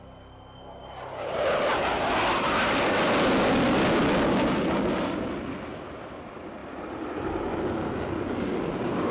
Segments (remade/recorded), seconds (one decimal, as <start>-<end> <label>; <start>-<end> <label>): 0.0-6.6 recorded; 6.6-7.3 remade; 7.3-9.1 recorded